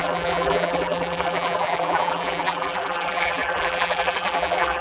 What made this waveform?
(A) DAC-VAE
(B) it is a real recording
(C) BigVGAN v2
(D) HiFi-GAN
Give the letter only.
C